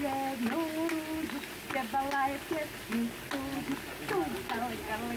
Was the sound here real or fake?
real